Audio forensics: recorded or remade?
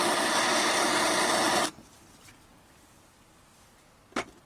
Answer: recorded